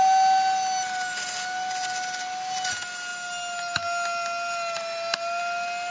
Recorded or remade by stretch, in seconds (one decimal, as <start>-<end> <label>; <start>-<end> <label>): 0.0-5.9 recorded